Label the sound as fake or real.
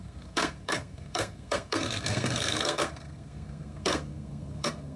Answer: fake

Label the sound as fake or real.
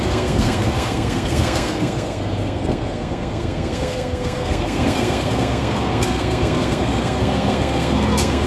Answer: fake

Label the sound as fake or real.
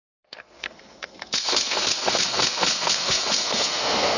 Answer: fake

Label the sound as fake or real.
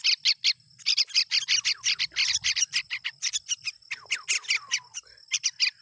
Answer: real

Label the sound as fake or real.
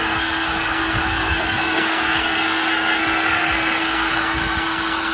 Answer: fake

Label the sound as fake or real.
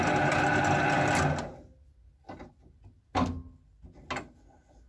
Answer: real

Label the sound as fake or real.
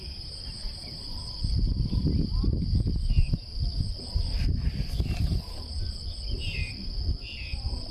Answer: real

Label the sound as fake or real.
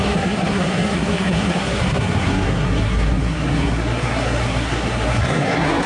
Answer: fake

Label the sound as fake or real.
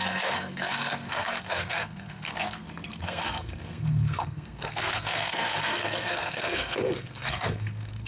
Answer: fake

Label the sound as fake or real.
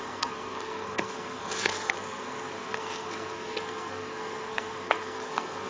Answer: fake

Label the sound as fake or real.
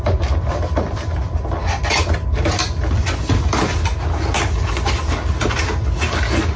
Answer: real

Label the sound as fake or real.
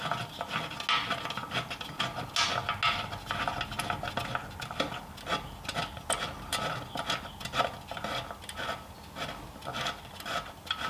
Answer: real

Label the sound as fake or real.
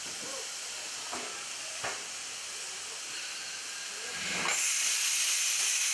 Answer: real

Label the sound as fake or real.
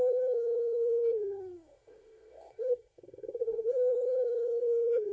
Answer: fake